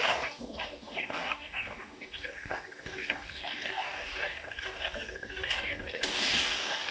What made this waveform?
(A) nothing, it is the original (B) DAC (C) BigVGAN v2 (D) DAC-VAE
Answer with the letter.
B